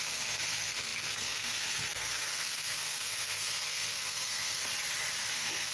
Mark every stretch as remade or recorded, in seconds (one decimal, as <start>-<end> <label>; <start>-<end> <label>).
0.0-4.7 remade; 4.7-5.3 recorded; 5.3-5.7 remade